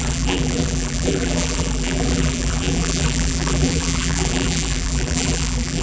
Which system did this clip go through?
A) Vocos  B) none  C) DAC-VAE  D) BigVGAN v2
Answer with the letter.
D